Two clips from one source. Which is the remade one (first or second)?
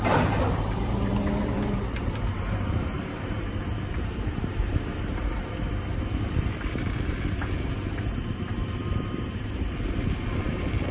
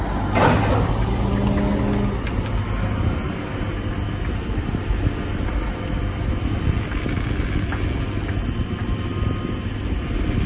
first